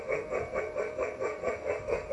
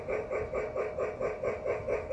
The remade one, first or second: first